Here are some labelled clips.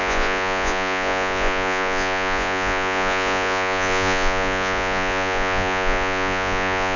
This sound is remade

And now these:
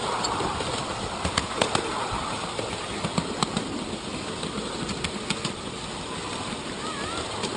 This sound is recorded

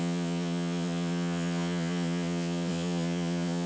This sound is remade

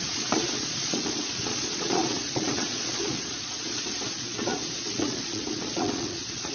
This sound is remade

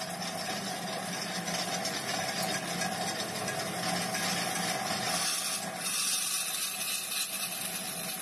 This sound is recorded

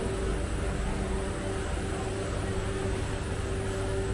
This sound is recorded